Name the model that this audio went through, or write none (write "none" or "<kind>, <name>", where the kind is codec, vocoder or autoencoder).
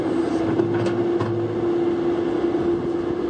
none